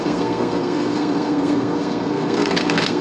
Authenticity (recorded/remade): remade